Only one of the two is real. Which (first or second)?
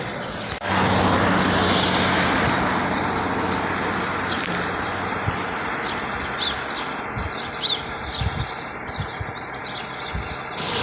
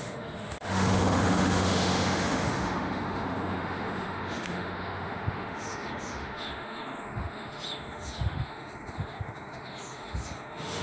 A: first